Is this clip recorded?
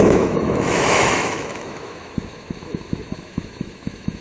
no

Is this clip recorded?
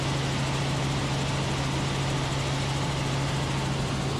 yes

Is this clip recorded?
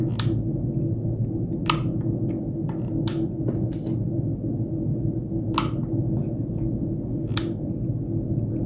yes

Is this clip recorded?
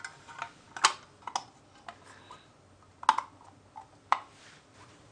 yes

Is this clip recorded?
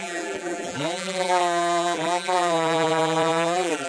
no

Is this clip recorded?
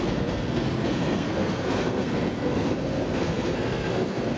no